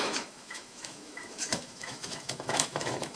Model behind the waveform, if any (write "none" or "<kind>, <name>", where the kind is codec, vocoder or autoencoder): autoencoder, DAC-VAE